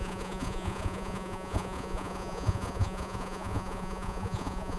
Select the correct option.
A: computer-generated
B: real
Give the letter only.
A